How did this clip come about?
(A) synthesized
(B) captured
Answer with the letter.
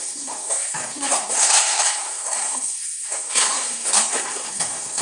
A